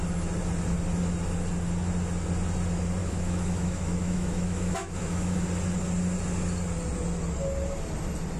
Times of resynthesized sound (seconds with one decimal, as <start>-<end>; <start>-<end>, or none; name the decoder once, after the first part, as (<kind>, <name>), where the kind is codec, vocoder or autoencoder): 3.0-5.4 (autoencoder, DAC-VAE)